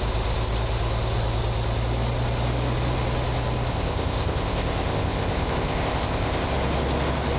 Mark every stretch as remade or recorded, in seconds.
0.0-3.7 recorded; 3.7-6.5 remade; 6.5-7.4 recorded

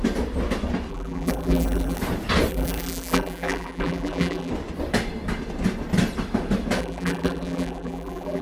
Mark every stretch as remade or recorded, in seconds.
0.0-0.9 recorded; 0.9-2.0 remade; 2.0-2.5 recorded; 2.5-4.5 remade; 4.5-6.8 recorded; 6.8-8.4 remade

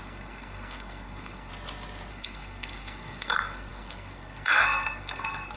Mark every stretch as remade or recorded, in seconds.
0.0-1.5 remade; 1.5-2.1 recorded; 2.1-5.6 remade

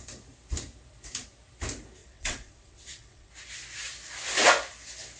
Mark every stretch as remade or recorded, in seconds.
0.0-2.0 recorded; 2.0-3.3 remade; 3.3-5.2 recorded

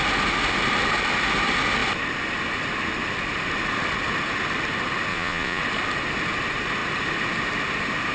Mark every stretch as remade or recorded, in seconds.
0.0-5.1 recorded; 5.1-5.6 remade; 5.6-8.1 recorded

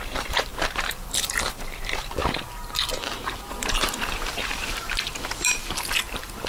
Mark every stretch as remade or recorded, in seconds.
0.0-5.6 remade; 5.6-6.1 recorded; 6.1-6.5 remade